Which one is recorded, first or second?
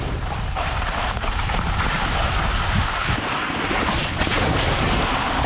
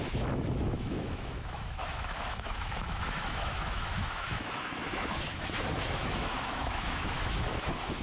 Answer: first